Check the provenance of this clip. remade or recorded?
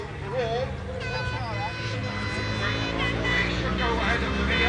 recorded